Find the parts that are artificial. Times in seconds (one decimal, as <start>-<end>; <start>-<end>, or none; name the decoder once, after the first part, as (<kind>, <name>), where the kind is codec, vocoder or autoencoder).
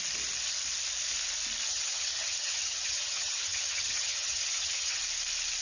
1.6-5.0 (vocoder, HiFi-GAN)